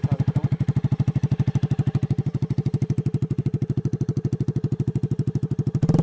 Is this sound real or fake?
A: real